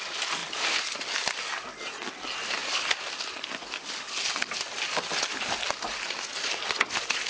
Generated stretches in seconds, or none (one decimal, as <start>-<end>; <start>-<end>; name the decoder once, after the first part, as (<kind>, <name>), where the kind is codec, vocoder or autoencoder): none